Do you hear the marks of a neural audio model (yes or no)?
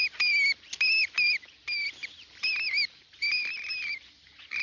no